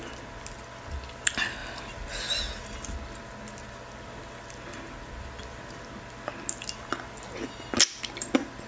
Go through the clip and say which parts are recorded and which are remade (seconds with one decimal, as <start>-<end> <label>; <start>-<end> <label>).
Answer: 0.0-8.7 recorded